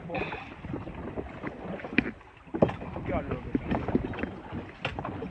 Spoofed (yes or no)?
no